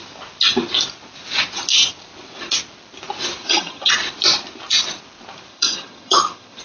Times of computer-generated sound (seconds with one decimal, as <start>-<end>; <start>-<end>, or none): 3.4-3.9; 5.5-6.6